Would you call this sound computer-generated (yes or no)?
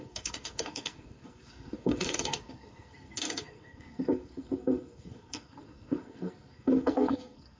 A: yes